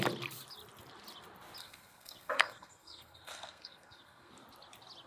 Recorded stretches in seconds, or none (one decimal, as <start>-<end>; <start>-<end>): 0.0-1.6; 4.3-5.1